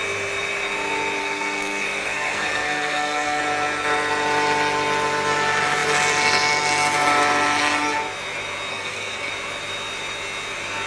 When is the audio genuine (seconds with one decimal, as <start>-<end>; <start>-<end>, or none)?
0.0-1.2; 3.4-8.7; 9.3-10.9